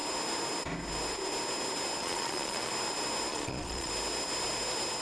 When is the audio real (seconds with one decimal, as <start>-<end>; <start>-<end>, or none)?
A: 0.0-2.0; 2.7-3.3; 3.9-5.0